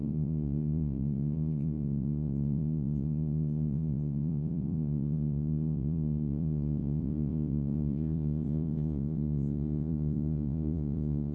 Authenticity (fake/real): fake